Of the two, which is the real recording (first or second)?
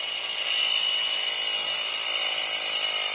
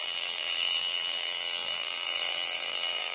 first